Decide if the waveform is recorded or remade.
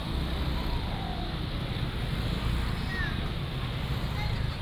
recorded